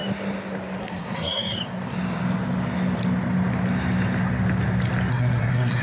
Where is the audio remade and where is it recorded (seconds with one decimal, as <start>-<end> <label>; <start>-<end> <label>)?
0.0-0.8 recorded; 0.8-1.6 remade; 1.6-5.1 recorded; 5.1-5.8 remade